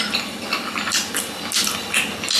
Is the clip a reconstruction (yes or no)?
no